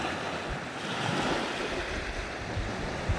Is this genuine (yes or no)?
yes